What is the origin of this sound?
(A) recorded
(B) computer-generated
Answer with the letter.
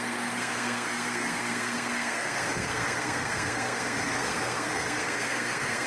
B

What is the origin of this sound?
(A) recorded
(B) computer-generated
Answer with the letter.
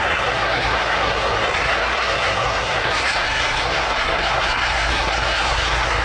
B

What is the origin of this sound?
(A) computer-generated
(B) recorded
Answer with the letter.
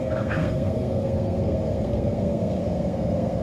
A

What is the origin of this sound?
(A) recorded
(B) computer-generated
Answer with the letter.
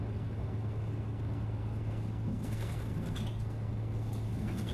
B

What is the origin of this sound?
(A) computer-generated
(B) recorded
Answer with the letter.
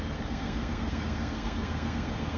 A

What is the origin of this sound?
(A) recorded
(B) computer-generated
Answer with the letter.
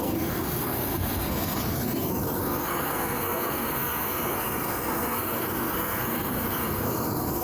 B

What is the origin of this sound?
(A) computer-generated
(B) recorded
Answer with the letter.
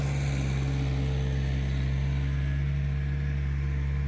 B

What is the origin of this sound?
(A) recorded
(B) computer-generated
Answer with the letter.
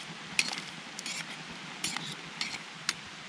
A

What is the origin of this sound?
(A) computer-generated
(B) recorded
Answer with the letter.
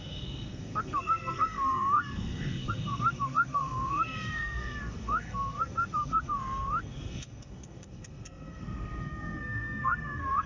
A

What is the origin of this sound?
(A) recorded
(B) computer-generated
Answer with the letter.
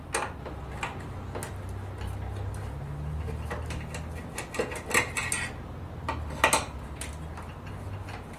A